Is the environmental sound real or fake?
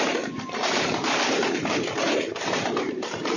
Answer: fake